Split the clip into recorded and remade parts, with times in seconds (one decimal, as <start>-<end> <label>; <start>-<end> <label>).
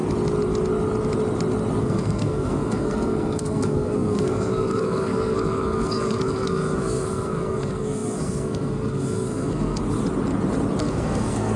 0.0-1.8 recorded; 1.8-9.8 remade; 9.8-10.8 recorded; 10.8-11.6 remade